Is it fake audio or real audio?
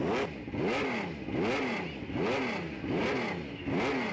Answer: real